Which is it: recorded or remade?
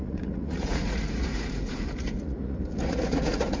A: remade